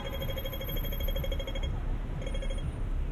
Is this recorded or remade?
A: recorded